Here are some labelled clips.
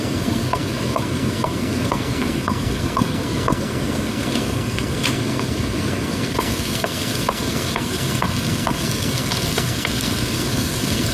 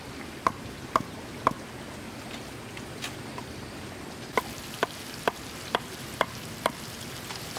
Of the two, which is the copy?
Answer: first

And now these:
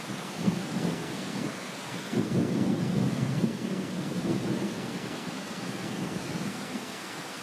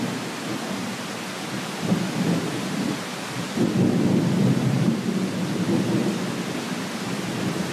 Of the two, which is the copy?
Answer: first